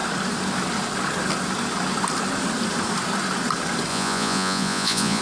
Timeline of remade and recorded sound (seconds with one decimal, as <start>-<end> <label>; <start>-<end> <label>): 0.0-3.9 recorded; 3.9-5.2 remade